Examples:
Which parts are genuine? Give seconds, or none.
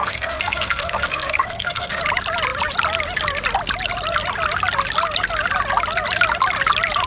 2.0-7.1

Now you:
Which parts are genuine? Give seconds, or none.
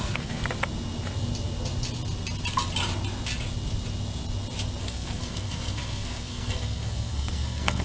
0.4-4.8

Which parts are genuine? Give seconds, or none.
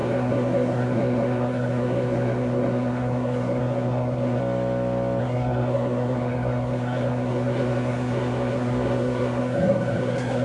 4.4-5.2